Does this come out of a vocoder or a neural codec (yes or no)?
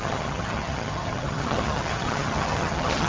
yes